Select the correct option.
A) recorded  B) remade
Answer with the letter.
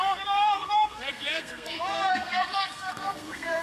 B